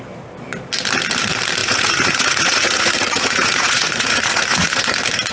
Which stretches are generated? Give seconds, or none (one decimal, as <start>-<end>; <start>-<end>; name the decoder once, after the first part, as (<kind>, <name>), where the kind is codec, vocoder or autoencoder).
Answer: 1.6-4.8 (vocoder, Vocos)